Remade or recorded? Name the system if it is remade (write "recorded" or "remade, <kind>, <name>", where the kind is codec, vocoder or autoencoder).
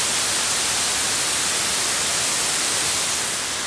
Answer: recorded